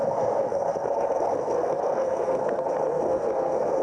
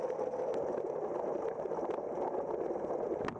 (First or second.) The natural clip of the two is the second